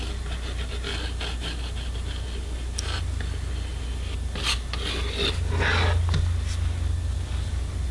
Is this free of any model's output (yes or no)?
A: yes